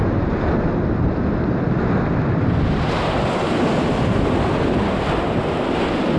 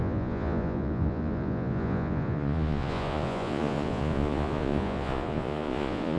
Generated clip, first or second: second